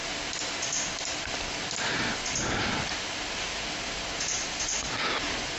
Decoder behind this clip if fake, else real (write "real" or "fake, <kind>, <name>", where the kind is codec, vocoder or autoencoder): real